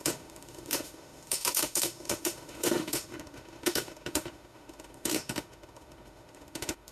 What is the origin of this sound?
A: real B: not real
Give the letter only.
B